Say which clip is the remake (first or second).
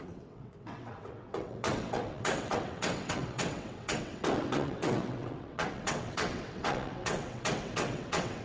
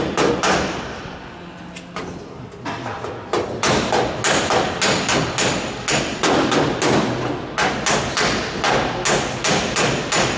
first